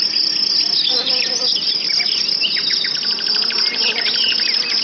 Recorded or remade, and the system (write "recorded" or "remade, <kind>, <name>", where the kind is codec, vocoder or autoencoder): recorded